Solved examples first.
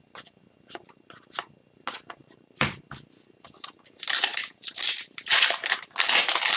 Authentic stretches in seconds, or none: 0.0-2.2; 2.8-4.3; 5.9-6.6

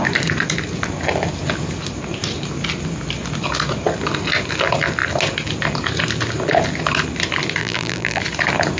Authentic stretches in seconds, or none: 0.0-7.6; 8.2-8.8